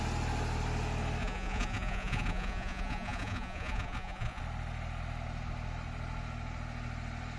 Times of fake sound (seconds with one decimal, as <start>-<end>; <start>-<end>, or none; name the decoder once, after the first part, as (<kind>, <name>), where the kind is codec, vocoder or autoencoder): 1.2-4.4 (vocoder, Vocos)